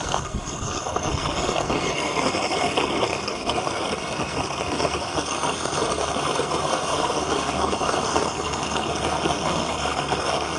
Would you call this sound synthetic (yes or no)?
yes